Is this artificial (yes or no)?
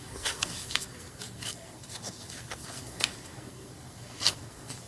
yes